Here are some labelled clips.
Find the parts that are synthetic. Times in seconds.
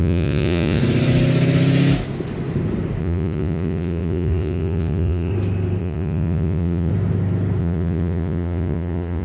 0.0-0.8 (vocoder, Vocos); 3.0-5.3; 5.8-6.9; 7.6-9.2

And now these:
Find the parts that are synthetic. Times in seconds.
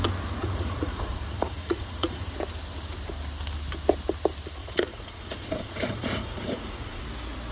0.4-2.3 (vocoder, Vocos); 4.6-7.0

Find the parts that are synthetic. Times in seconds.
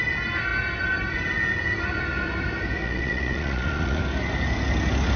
2.8-4.0 (vocoder, Vocos)